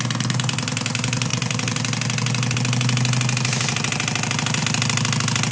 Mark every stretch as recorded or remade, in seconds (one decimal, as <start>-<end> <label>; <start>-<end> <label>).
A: 0.0-5.5 recorded